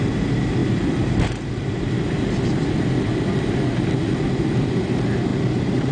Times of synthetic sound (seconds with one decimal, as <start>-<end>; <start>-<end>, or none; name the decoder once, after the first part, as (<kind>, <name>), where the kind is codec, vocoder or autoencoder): none